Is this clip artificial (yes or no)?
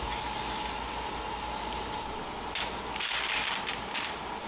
no